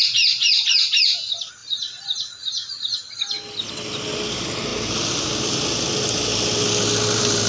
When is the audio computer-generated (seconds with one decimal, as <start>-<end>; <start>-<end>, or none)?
none